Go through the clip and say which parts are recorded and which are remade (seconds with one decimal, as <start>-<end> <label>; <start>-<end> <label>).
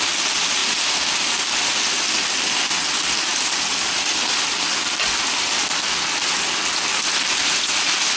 0.0-8.2 recorded